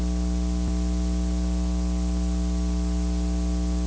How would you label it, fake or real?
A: real